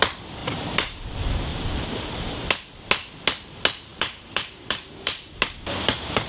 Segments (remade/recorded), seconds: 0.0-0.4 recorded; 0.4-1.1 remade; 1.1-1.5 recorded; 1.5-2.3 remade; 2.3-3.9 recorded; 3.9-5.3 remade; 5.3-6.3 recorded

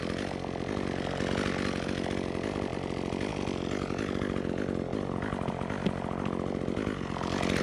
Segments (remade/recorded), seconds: 0.0-7.6 recorded

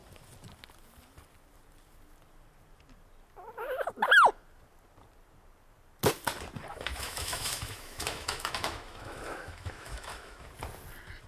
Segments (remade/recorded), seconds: 0.0-6.7 recorded; 6.7-10.5 remade; 10.5-11.3 recorded